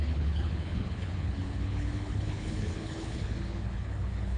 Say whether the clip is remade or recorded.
remade